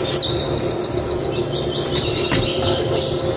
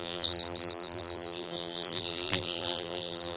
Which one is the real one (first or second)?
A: first